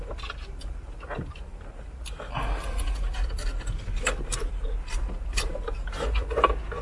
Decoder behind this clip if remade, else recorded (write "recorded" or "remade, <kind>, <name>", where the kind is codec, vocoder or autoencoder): recorded